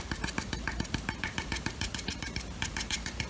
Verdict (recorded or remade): remade